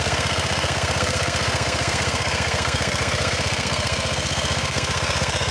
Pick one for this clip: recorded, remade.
remade